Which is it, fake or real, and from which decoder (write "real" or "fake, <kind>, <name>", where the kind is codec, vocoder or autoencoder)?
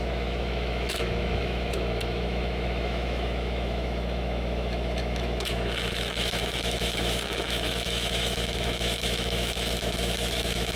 fake, autoencoder, DAC-VAE